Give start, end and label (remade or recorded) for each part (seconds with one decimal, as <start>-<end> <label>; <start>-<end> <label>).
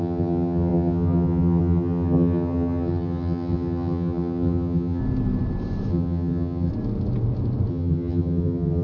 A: 0.0-5.0 remade; 5.0-5.9 recorded; 5.9-6.7 remade; 6.7-7.7 recorded; 7.7-8.8 remade